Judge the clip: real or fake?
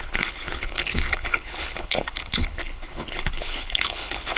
fake